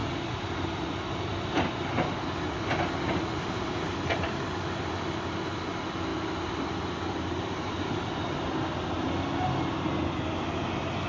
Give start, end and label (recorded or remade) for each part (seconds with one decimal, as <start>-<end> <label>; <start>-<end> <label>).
0.0-1.3 remade; 1.3-6.1 recorded; 6.1-9.1 remade; 9.1-11.1 recorded